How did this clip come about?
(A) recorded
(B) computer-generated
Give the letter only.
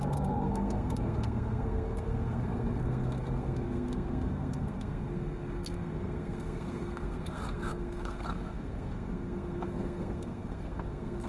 B